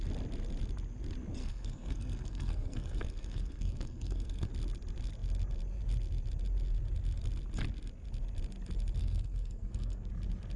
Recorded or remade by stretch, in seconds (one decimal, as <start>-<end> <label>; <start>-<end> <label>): 0.0-1.4 recorded; 1.4-4.5 remade; 4.5-9.0 recorded; 9.0-10.1 remade; 10.1-10.6 recorded